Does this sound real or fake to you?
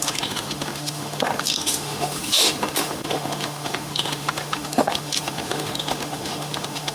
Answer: fake